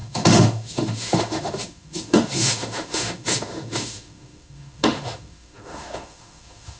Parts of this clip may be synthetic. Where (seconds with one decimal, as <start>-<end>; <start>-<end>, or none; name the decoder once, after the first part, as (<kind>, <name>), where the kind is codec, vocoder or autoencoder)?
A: 0.0-6.8 (autoencoder, DAC-VAE)